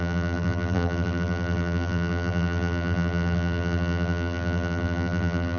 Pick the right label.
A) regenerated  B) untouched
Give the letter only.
A